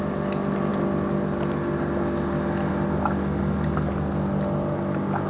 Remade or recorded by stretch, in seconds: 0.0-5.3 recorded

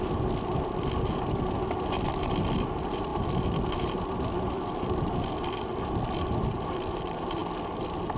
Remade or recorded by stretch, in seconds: 0.0-8.2 recorded

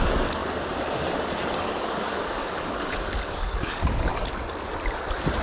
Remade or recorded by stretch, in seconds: 0.0-0.4 remade; 0.4-1.2 recorded; 1.2-4.1 remade; 4.1-5.4 recorded